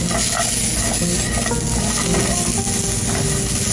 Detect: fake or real real